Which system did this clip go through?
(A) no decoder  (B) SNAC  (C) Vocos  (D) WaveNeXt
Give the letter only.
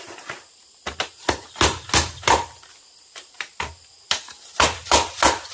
A